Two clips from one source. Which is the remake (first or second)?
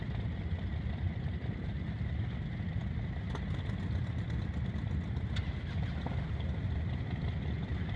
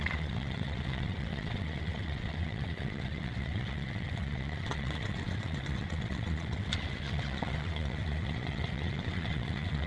second